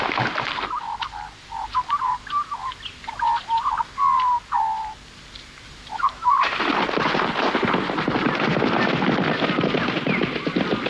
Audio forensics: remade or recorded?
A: recorded